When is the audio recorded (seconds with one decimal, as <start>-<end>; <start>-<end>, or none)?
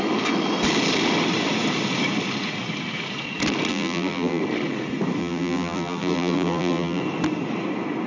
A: 0.0-3.7; 4.4-5.2; 7.0-8.1